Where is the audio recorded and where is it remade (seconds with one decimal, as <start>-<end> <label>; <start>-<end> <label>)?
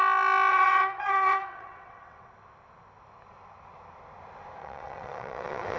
0.0-0.5 recorded; 0.5-2.3 remade; 2.3-4.6 recorded; 4.6-5.8 remade